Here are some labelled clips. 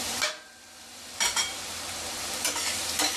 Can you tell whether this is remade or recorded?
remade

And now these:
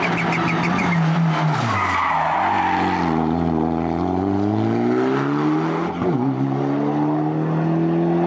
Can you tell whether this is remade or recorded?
recorded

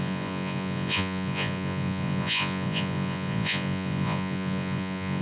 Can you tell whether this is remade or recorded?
remade